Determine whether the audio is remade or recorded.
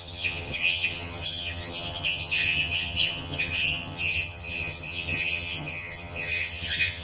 remade